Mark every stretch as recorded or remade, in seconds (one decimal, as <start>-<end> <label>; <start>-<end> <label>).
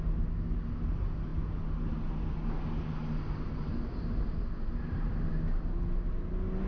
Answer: 0.0-6.7 recorded